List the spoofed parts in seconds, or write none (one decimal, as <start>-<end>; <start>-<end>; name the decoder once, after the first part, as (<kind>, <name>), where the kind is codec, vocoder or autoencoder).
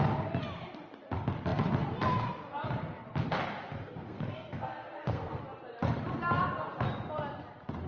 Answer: 3.8-5.4 (codec, SNAC)